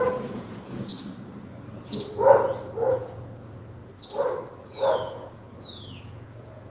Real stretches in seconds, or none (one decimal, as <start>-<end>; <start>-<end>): 0.9-2.9; 3.8-4.6